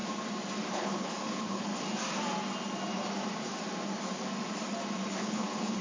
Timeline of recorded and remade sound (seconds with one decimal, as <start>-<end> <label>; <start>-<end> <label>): 0.0-0.7 recorded; 0.7-1.7 remade; 1.7-5.2 recorded; 5.2-5.8 remade